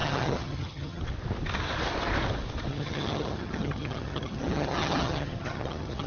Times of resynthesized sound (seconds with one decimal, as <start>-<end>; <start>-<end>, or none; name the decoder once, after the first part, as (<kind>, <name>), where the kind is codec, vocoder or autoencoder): 0.0-1.0 (vocoder, HiFi-GAN); 2.7-6.1